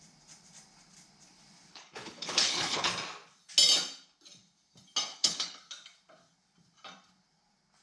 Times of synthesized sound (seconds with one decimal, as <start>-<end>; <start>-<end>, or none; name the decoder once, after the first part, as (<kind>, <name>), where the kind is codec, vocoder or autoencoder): 1.7-2.9 (codec, HILCodec); 5.1-5.6

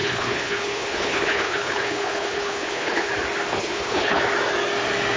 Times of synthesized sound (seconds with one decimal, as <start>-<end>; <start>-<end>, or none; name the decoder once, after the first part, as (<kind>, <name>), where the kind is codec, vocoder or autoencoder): 0.0-3.1 (codec, HILCodec); 3.5-4.2

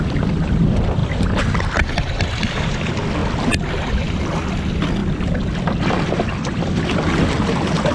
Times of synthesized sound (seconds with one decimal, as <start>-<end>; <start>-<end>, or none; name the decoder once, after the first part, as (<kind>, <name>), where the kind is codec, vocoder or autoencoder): none